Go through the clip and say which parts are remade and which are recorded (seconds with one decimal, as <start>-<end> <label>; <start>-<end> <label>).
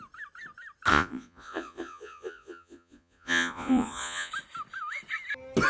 0.0-0.9 recorded; 0.9-4.3 remade; 4.3-5.7 recorded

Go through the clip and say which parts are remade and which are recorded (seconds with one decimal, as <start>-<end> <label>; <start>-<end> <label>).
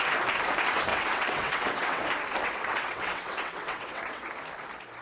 0.0-0.9 recorded; 0.9-2.0 remade; 2.0-2.4 recorded; 2.4-4.3 remade; 4.3-5.0 recorded